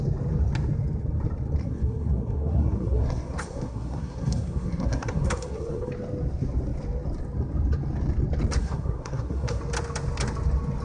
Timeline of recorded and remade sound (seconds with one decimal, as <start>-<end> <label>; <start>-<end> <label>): 0.0-1.6 recorded; 1.6-5.9 remade; 5.9-8.6 recorded; 8.6-9.6 remade; 9.6-10.8 recorded